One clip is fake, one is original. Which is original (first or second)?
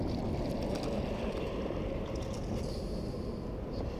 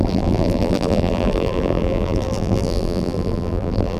first